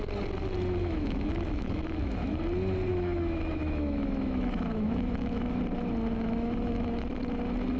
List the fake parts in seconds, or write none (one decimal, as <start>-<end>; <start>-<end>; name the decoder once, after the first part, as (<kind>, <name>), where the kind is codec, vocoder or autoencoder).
0.8-2.4 (autoencoder, DAC-VAE); 2.9-5.6; 6.1-7.0